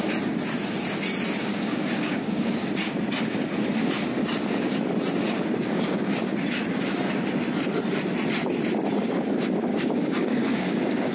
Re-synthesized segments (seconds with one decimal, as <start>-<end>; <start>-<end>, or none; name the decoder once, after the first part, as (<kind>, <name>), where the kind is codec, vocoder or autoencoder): 1.5-2.5 (codec, DAC); 9.7-11.1